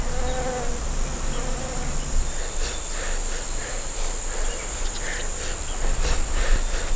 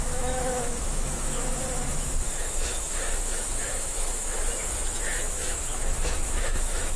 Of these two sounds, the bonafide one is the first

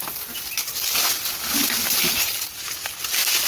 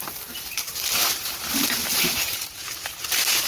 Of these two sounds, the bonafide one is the first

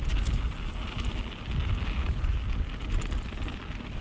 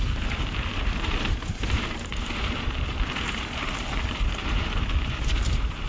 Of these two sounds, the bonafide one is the first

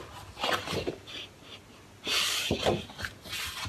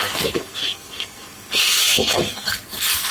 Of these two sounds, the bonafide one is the first